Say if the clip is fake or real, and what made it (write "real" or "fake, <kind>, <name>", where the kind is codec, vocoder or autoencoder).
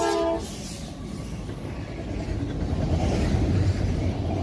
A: real